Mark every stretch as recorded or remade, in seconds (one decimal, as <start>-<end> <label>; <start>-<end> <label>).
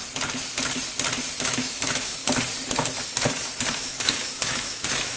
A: 0.0-1.4 recorded; 1.4-2.2 remade; 2.2-3.7 recorded; 3.7-5.2 remade